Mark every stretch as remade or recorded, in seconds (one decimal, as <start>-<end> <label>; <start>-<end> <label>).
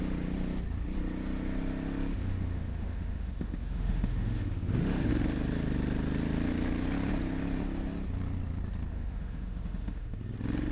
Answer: 0.0-2.1 recorded; 2.1-5.1 remade; 5.1-8.9 recorded; 8.9-10.2 remade; 10.2-10.7 recorded